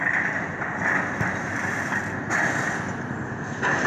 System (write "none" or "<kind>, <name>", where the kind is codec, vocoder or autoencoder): none